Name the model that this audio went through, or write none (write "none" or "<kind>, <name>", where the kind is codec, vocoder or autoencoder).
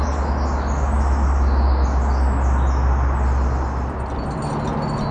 none